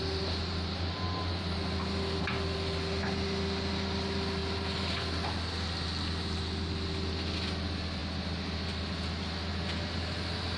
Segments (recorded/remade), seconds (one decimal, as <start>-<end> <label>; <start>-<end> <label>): 0.0-10.6 recorded